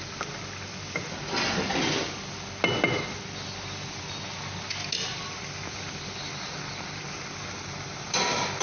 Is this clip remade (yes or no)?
no